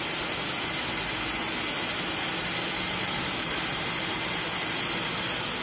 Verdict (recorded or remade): recorded